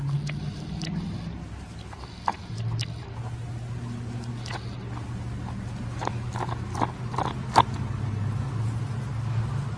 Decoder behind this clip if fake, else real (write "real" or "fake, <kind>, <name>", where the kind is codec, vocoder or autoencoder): real